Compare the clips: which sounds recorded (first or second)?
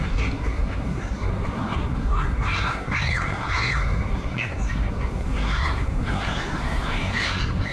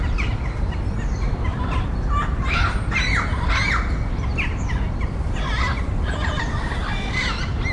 second